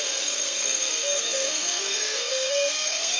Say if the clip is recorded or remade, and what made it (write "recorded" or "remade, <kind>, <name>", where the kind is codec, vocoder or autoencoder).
remade, codec, SNAC